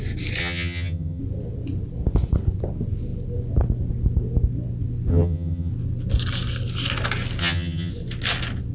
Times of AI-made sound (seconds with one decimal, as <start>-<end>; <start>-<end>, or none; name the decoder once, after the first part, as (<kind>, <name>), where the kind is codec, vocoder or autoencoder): 0.4-1.2 (vocoder, HiFi-GAN); 5.1-5.7; 7.4-7.9